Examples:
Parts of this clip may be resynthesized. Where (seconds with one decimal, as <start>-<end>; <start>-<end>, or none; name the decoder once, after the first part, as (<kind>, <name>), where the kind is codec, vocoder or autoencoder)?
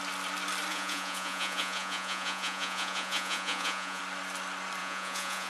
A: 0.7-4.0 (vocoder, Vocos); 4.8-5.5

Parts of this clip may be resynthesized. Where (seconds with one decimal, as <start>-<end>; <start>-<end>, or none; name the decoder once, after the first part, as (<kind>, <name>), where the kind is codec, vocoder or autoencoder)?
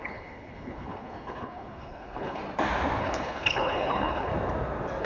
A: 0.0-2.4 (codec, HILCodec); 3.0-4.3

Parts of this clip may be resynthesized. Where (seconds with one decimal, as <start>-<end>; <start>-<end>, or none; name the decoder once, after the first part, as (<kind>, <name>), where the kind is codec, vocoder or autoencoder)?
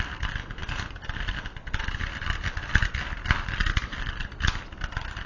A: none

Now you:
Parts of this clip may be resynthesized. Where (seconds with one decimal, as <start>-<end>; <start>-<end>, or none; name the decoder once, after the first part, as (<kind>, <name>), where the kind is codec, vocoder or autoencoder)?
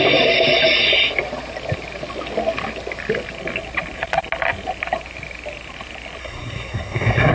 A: 6.2-7.3 (codec, SNAC)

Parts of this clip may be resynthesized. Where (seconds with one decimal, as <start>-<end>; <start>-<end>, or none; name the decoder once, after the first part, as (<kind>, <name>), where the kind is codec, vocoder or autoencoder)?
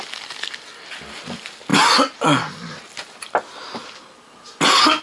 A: none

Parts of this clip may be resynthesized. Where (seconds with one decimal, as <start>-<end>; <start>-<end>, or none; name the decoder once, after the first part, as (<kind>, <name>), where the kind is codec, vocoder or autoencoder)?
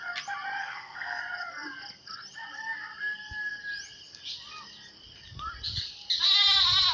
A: 0.6-1.2 (codec, SNAC)